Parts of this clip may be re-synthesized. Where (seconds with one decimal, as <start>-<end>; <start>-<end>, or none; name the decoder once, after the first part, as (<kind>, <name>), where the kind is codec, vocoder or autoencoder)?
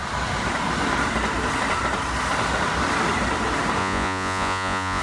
3.8-5.0 (vocoder, Vocos)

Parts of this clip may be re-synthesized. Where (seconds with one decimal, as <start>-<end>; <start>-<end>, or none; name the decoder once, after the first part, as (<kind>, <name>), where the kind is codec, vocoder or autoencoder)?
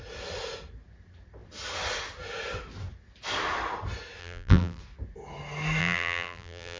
4.2-4.8 (vocoder, BigVGAN v2); 5.8-6.8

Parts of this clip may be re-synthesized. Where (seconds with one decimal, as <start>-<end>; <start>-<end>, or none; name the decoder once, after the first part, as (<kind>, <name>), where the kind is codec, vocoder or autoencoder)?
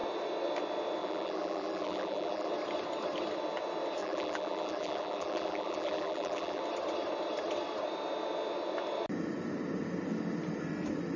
1.0-2.5 (vocoder, BigVGAN v2); 4.0-6.6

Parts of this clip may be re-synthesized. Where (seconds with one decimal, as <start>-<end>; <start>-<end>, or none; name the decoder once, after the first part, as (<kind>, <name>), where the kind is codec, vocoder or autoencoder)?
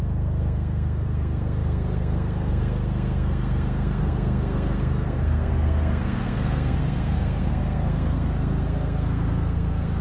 0.0-10.0 (codec, SNAC)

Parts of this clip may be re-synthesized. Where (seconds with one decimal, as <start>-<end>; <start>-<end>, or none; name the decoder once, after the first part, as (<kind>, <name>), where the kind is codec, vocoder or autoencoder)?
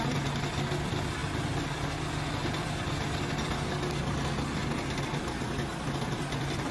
none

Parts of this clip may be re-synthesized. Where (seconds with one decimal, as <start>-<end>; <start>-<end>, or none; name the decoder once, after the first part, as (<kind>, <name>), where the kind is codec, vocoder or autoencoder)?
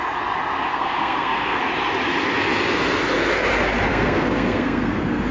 0.7-1.6 (codec, SNAC); 3.9-5.3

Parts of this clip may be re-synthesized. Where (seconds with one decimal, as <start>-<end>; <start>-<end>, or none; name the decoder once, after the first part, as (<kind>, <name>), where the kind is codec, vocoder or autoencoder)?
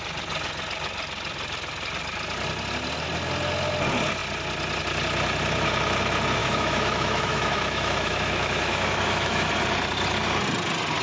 6.4-9.5 (autoencoder, DAC-VAE)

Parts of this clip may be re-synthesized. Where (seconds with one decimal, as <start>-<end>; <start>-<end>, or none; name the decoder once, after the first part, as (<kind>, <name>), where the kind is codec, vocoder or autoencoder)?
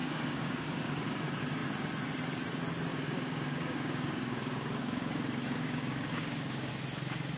0.0-1.2 (codec, DAC); 2.9-6.7